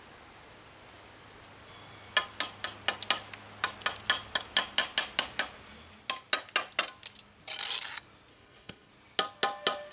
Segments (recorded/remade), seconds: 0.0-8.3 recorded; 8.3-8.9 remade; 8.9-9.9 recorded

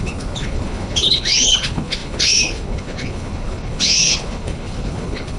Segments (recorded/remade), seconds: 0.0-5.4 remade

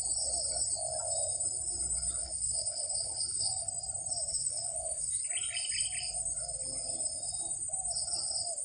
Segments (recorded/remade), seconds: 0.0-2.2 recorded; 2.2-3.7 remade; 3.7-4.3 recorded; 4.3-5.2 remade; 5.2-8.6 recorded

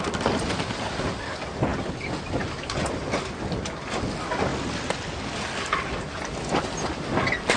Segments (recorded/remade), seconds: 0.0-7.6 recorded

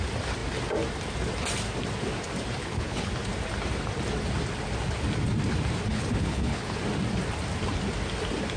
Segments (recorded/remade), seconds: 0.0-2.6 recorded; 2.6-3.1 remade; 3.1-5.9 recorded; 5.9-6.8 remade; 6.8-8.6 recorded

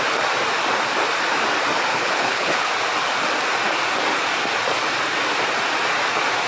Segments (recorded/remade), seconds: 0.0-1.9 recorded; 1.9-2.7 remade; 2.7-6.5 recorded

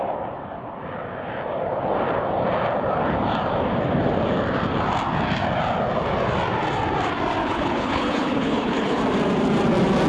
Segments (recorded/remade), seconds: 0.0-7.4 recorded; 7.4-9.0 remade; 9.0-10.1 recorded

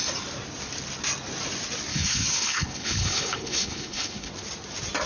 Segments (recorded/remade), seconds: 0.0-1.9 recorded; 1.9-4.3 remade; 4.3-5.1 recorded